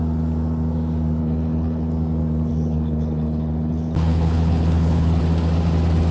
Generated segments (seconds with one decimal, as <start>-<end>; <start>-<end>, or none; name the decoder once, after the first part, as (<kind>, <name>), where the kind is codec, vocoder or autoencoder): 1.2-1.9 (codec, HILCodec); 2.5-5.2